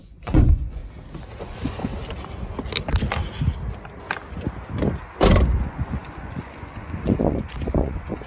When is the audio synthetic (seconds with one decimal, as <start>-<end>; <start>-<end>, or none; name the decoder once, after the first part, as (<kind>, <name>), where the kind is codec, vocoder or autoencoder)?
0.0-0.8 (vocoder, Vocos); 1.4-1.9; 5.6-8.3